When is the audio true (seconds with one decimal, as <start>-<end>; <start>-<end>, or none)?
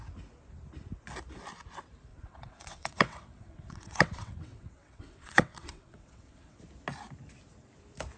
0.0-2.1; 6.6-8.2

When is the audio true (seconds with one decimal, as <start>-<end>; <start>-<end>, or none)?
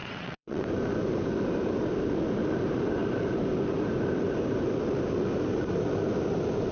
0.6-6.7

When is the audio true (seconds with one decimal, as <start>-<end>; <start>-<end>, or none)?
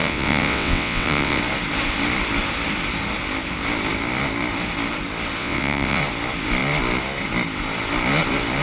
1.4-5.4; 6.0-8.6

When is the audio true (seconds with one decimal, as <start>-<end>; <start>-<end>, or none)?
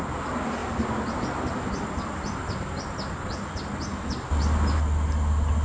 0.0-5.6